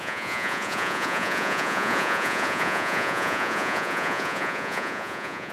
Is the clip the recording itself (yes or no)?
no